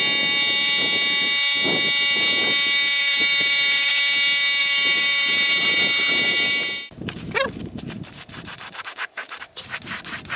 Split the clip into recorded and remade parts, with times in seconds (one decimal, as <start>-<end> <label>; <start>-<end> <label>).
0.0-3.0 recorded; 3.0-3.9 remade; 3.9-4.6 recorded; 4.6-9.4 remade; 9.4-10.4 recorded